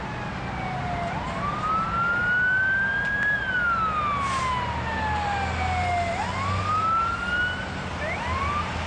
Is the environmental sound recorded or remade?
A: recorded